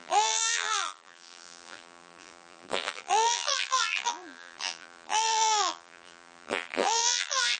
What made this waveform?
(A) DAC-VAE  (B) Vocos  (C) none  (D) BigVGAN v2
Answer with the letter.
D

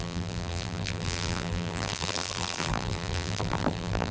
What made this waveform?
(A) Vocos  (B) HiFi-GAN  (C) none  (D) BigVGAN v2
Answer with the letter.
D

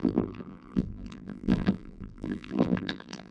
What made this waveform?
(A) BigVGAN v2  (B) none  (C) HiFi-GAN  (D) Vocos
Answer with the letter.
A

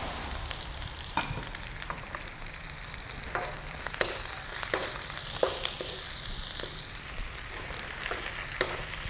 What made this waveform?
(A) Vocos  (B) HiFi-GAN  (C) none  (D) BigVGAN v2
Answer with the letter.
D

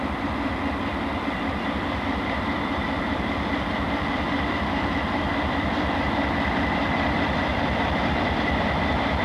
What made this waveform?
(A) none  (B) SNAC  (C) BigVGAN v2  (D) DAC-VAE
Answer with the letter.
C